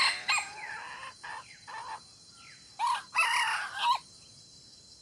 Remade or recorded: recorded